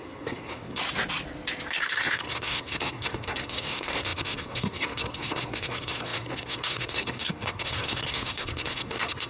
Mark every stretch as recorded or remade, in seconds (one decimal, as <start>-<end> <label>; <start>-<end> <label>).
0.0-0.8 remade; 0.8-1.7 recorded; 1.7-9.3 remade